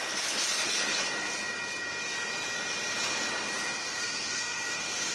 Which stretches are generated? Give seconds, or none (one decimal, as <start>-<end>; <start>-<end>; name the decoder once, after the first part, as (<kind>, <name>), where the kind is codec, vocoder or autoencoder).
3.8-5.1 (codec, SNAC)